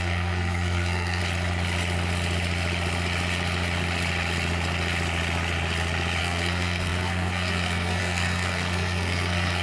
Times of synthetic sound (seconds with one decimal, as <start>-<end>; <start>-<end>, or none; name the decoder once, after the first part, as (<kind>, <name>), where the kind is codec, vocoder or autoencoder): 0.0-1.2 (codec, SNAC); 6.2-9.6